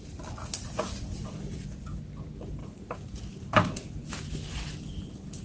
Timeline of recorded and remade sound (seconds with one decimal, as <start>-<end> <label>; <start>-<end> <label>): 0.0-5.4 recorded